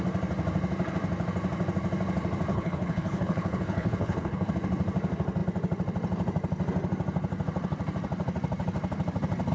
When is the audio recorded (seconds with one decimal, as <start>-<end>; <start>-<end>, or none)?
0.0-2.5; 4.5-9.5